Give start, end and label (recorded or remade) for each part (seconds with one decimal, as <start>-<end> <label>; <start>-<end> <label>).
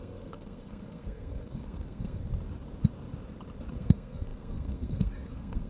0.0-2.2 remade; 2.2-3.7 recorded; 3.7-5.7 remade